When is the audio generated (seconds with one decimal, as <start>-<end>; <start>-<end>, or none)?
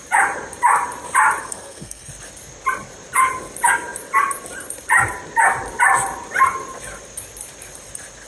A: 1.4-2.1